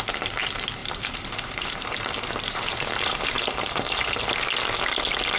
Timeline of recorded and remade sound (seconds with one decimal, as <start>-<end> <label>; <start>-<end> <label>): 0.0-0.8 recorded; 0.8-4.0 remade; 4.0-5.4 recorded

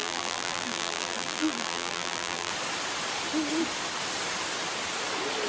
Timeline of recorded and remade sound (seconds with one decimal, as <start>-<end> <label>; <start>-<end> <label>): 0.0-2.5 remade; 2.5-5.5 recorded

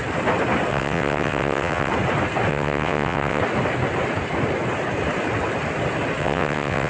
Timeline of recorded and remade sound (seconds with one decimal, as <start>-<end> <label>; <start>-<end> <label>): 0.0-0.7 recorded; 0.7-1.9 remade; 1.9-2.5 recorded; 2.5-3.4 remade; 3.4-6.2 recorded; 6.2-6.9 remade

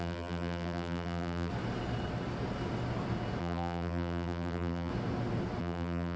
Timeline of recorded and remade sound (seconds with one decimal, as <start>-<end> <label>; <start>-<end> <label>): 0.0-1.5 remade; 1.5-3.4 recorded; 3.4-4.9 remade; 4.9-5.6 recorded; 5.6-6.2 remade

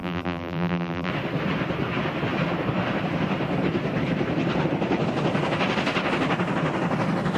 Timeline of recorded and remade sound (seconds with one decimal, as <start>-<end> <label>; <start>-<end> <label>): 0.0-1.1 remade; 1.1-7.4 recorded

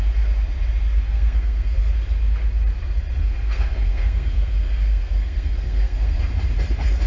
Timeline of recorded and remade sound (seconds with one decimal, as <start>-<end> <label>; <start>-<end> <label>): 0.0-1.1 recorded; 1.1-1.9 remade; 1.9-3.2 recorded; 3.2-6.2 remade; 6.2-7.1 recorded